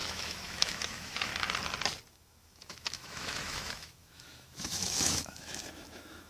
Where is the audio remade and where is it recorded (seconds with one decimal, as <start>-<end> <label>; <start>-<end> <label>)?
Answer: 0.0-1.3 remade; 1.3-2.1 recorded; 2.1-6.3 remade